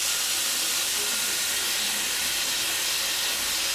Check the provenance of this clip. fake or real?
real